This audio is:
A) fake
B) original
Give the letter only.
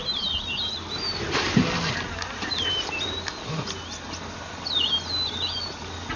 B